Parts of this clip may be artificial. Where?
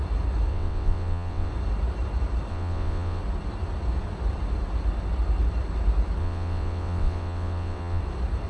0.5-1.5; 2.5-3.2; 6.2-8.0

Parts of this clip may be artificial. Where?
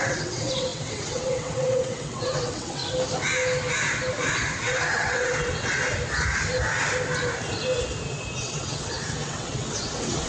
0.0-2.8; 4.6-5.8; 8.4-10.3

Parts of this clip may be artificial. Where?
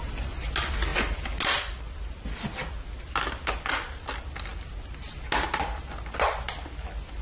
none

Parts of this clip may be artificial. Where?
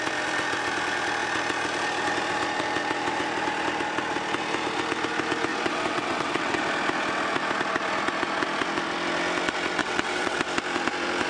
5.5-6.6; 9.8-10.4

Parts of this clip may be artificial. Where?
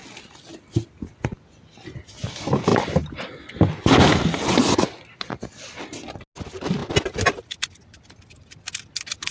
none